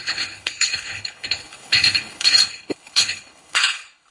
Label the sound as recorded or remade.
remade